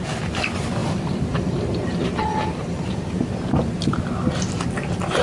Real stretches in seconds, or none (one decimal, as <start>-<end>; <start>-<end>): 0.0-0.8; 3.9-5.2